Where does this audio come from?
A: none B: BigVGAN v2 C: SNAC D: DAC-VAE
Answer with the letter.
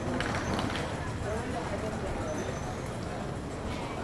A